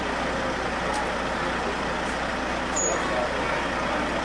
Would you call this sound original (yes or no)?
yes